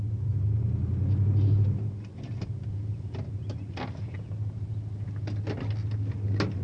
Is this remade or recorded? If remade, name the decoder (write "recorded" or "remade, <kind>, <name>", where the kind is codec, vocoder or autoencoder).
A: recorded